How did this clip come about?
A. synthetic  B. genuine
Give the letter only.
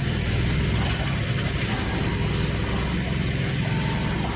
B